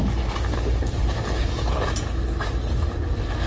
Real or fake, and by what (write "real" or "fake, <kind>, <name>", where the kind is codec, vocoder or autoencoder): real